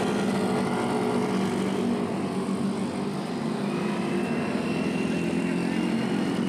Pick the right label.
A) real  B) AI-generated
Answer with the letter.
A